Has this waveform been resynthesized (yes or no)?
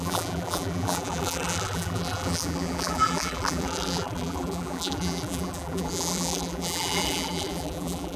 yes